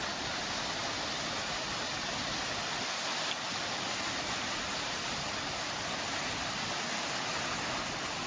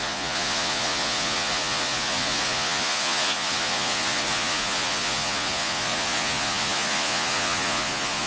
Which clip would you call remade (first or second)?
second